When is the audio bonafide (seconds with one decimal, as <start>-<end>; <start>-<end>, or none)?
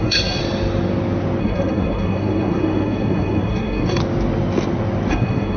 0.4-1.4; 4.0-5.1